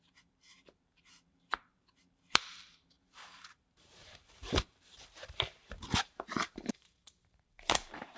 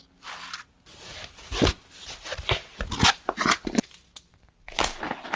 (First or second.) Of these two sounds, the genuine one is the second